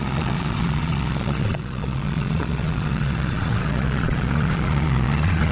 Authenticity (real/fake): fake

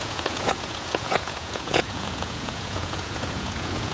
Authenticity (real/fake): fake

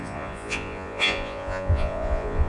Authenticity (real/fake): fake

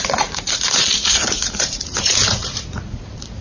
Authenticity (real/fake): fake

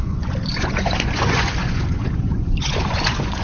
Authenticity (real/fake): fake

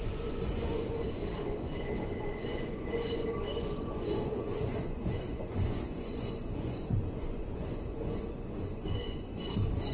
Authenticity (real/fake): fake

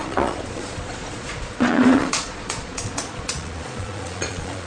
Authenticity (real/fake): fake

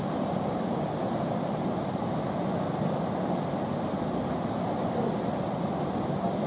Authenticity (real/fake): real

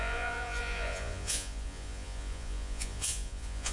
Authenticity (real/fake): fake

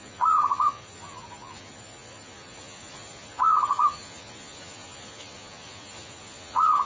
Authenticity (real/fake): fake